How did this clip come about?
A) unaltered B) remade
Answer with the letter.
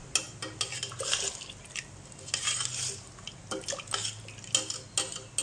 A